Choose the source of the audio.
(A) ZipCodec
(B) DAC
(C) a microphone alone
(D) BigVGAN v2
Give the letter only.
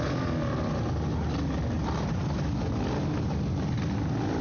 C